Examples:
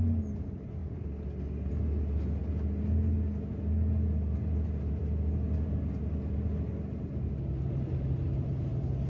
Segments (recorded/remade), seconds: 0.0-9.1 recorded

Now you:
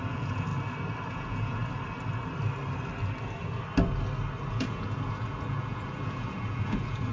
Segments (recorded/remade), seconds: 0.0-0.5 remade; 0.5-1.1 recorded; 1.1-1.6 remade; 1.6-4.5 recorded; 4.5-7.1 remade

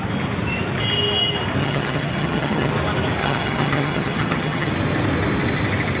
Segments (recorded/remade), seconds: 0.0-1.6 recorded; 1.6-2.7 remade; 2.7-3.2 recorded; 3.2-4.7 remade; 4.7-6.0 recorded

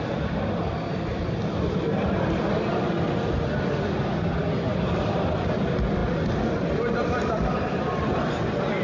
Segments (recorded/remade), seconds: 0.0-8.8 recorded

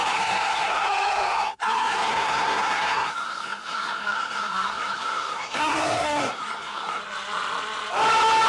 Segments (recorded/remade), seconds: 0.0-7.0 remade; 7.0-8.5 recorded